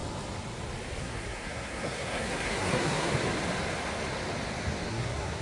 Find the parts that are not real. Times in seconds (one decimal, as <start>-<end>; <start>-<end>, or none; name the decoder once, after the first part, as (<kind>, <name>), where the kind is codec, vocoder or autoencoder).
1.0-3.1 (codec, SNAC); 4.9-5.4